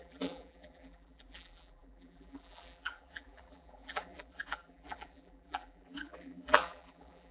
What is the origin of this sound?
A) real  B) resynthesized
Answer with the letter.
B